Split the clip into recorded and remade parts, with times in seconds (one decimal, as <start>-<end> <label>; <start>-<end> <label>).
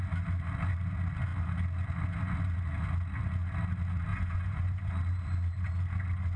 0.0-4.1 recorded; 4.1-4.9 remade; 4.9-6.4 recorded